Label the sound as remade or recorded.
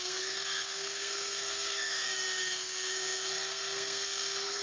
remade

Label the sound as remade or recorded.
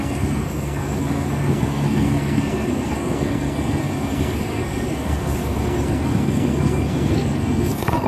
remade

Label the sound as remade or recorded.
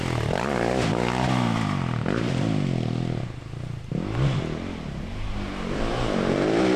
recorded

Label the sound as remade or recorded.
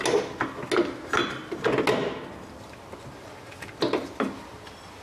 recorded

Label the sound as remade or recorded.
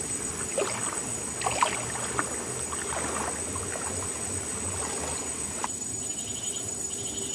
recorded